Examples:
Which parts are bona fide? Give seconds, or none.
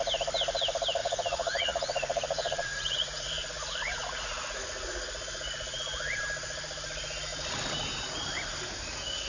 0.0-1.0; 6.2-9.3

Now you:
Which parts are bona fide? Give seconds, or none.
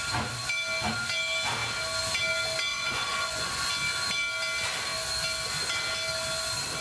0.0-2.7; 3.7-6.8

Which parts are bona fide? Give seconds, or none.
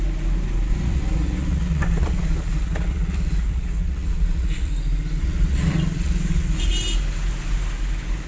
0.0-0.7; 4.7-5.2; 6.7-8.3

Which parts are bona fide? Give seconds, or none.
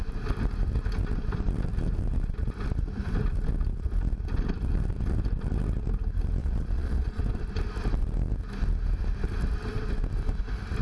0.0-6.4; 7.2-10.8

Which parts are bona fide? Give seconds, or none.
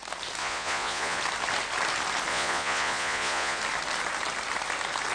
0.0-0.4; 1.2-2.3; 3.6-5.1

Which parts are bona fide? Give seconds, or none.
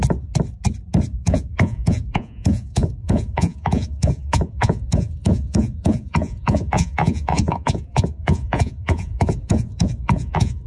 0.0-1.1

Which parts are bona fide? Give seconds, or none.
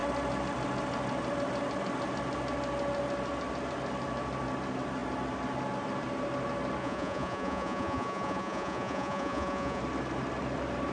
0.0-6.8; 9.8-10.9